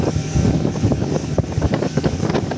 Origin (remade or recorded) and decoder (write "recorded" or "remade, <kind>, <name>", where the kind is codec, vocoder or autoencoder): remade, codec, DAC